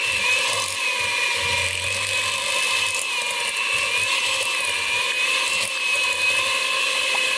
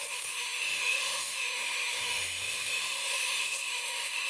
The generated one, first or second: second